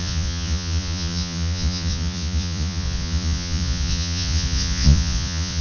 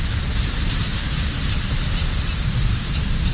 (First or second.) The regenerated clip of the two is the first